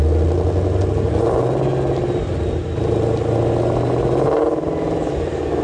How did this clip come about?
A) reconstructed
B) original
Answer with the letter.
B